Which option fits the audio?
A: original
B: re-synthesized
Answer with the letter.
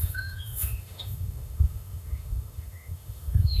B